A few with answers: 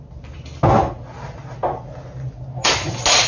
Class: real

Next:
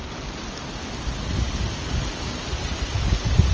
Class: real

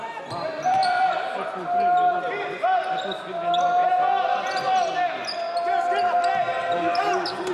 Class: real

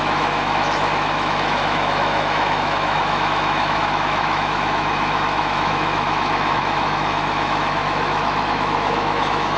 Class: fake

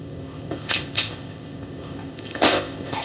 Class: fake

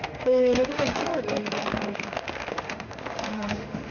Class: fake